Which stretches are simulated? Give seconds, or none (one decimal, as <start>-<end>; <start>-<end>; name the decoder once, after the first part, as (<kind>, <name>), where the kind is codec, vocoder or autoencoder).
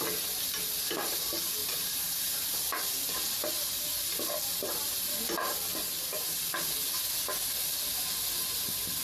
1.6-2.6 (vocoder, BigVGAN v2)